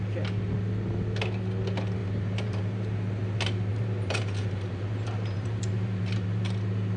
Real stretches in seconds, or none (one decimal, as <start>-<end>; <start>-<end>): 0.0-2.0; 3.0-3.7; 6.4-7.0